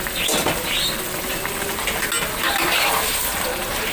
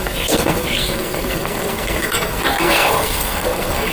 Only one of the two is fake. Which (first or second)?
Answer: second